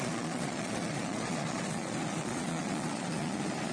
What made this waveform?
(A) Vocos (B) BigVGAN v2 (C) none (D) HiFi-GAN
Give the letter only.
A